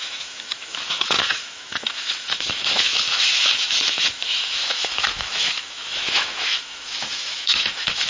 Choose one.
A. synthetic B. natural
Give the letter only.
A